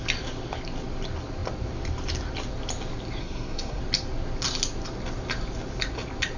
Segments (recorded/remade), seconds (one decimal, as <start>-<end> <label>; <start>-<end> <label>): 0.0-3.2 recorded; 3.2-3.8 remade; 3.8-6.4 recorded